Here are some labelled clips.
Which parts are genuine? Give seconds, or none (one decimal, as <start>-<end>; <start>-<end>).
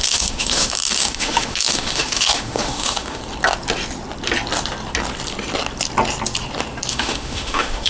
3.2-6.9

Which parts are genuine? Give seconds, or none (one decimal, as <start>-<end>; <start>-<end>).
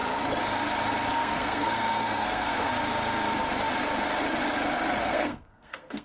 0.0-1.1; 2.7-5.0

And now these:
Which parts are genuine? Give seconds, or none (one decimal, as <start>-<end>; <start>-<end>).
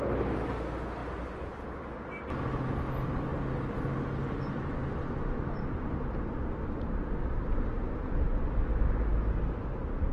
0.0-10.1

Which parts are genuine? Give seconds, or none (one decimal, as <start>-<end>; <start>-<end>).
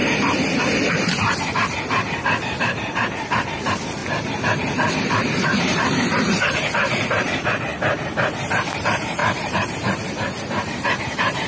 4.0-5.0; 7.7-8.4